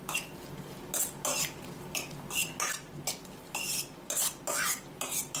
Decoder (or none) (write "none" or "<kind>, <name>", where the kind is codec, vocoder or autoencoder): none